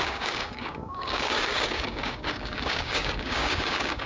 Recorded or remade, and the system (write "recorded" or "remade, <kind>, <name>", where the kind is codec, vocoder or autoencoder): remade, codec, DAC